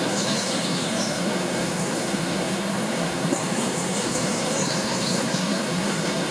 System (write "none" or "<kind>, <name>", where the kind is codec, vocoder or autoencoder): codec, SNAC